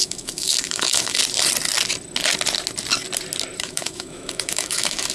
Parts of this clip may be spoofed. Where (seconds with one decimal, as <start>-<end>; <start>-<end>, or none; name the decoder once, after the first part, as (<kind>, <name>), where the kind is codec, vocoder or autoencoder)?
0.0-1.2 (autoencoder, DAC-VAE); 3.6-5.1